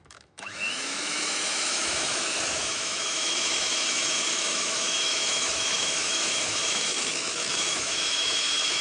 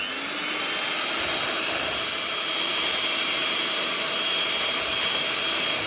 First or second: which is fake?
first